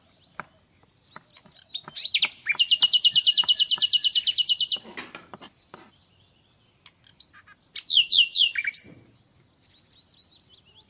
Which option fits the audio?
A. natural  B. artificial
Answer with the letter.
A